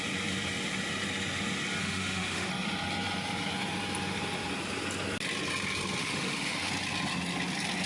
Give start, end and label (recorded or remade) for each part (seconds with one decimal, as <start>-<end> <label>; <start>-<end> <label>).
0.0-1.8 recorded; 1.8-2.5 remade; 2.5-6.0 recorded; 6.0-6.7 remade; 6.7-7.9 recorded

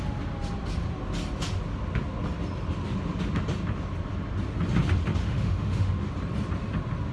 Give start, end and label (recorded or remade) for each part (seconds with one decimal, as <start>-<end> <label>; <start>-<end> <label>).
0.0-5.2 recorded; 5.2-6.1 remade; 6.1-7.1 recorded